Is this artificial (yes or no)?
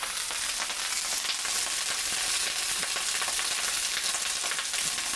no